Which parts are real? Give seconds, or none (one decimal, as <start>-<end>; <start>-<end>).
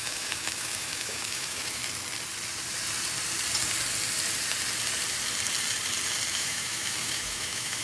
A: 1.8-6.3